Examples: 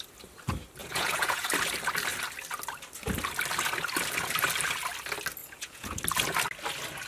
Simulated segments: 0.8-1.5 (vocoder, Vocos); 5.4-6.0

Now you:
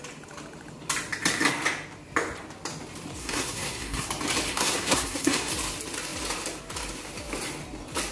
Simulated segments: 3.2-4.1 (codec, SNAC); 4.5-5.5